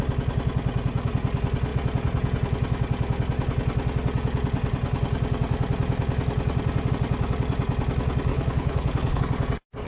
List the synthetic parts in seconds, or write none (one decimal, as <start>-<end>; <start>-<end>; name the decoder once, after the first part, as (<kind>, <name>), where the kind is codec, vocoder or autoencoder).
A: 8.3-9.2 (codec, HILCodec)